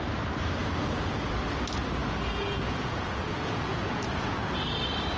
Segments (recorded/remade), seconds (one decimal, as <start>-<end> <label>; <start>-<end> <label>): 0.0-0.6 recorded; 0.6-1.3 remade; 1.3-2.0 recorded; 2.0-4.7 remade; 4.7-5.2 recorded